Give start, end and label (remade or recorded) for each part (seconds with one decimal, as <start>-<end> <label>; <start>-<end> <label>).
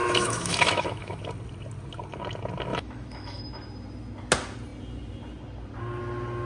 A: 0.0-1.2 remade; 1.2-2.7 recorded; 2.7-3.4 remade; 3.4-6.5 recorded